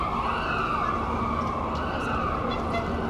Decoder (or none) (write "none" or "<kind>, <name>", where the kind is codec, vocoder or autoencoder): none